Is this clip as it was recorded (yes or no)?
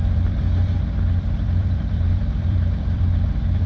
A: no